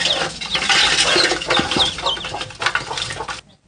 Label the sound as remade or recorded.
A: recorded